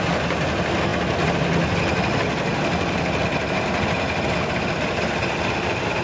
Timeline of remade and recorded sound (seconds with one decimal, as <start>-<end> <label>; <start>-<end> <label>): 0.0-6.0 recorded